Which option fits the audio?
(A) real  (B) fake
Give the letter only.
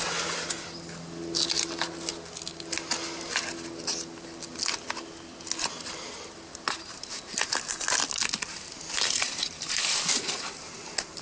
A